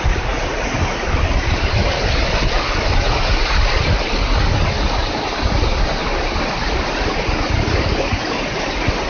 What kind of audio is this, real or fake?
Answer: real